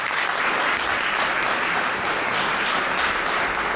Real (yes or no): yes